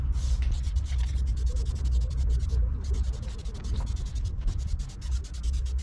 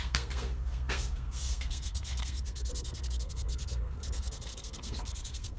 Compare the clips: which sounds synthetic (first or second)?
second